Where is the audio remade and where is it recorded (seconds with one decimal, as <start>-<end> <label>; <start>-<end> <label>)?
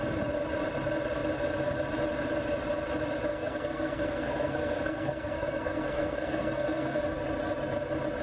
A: 0.0-3.3 recorded; 3.3-7.0 remade; 7.0-8.2 recorded